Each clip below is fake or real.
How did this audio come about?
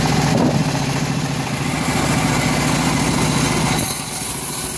real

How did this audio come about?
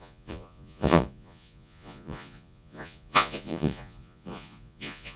fake